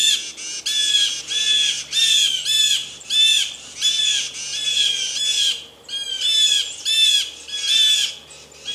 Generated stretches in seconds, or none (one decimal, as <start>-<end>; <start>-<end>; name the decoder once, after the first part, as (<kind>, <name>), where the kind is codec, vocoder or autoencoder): 2.8-3.7 (vocoder, BigVGAN v2)